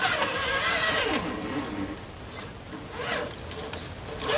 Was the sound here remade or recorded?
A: recorded